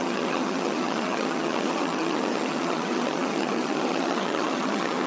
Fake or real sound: fake